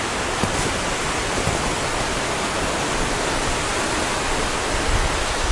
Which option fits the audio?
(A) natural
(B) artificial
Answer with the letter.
A